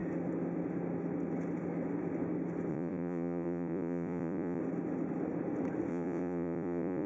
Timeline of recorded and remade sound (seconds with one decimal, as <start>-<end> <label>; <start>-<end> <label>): 0.0-2.7 recorded; 2.7-4.6 remade; 4.6-5.9 recorded; 5.9-7.1 remade